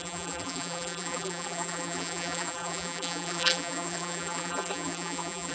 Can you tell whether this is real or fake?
fake